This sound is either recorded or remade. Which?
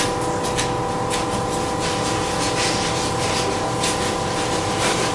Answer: recorded